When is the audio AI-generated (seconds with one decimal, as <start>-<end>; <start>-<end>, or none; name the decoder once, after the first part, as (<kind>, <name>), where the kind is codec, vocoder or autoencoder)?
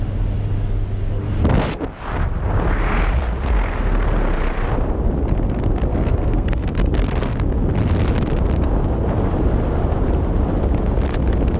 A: 5.9-6.7 (codec, SNAC)